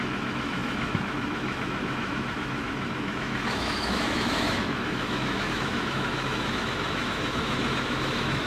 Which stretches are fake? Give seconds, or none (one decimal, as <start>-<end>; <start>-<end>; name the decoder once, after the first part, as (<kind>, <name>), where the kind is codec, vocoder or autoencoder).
0.0-8.5 (autoencoder, DAC-VAE)